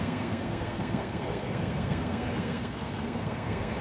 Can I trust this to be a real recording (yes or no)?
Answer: no